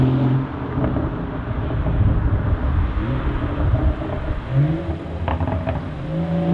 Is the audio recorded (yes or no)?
yes